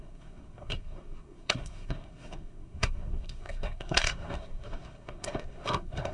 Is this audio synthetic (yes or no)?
yes